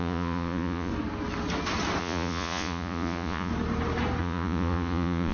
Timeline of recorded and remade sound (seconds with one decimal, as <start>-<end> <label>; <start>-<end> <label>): 0.0-0.9 remade; 0.9-2.0 recorded; 2.0-3.5 remade; 3.5-4.2 recorded; 4.2-5.3 remade